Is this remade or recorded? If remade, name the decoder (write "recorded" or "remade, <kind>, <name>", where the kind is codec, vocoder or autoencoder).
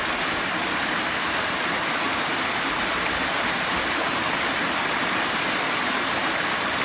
recorded